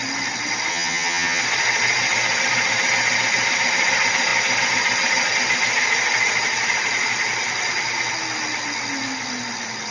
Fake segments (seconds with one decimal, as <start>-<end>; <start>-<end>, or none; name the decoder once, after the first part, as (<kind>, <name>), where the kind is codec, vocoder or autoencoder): 0.7-1.4 (vocoder, HiFi-GAN)